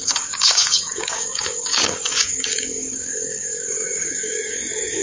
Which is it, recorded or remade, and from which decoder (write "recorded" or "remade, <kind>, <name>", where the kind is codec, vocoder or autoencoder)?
remade, codec, DAC